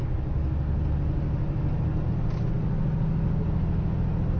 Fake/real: real